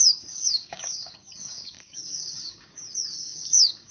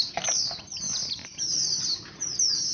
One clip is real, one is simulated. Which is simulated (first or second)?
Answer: first